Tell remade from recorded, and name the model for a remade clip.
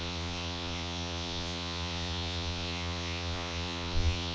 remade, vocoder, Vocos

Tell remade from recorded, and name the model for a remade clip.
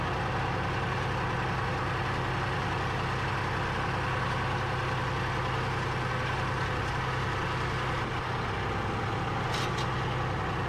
recorded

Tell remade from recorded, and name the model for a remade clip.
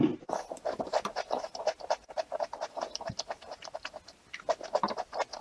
recorded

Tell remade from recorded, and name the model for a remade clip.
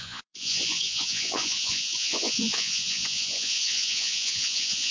remade, vocoder, Vocos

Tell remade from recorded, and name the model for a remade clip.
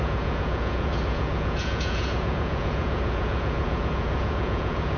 remade, vocoder, Vocos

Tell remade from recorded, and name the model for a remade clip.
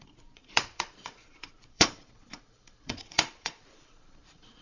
remade, vocoder, Vocos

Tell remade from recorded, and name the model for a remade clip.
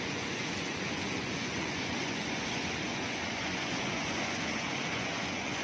remade, vocoder, Vocos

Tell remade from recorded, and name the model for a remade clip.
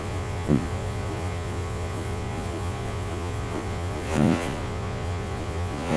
remade, vocoder, Vocos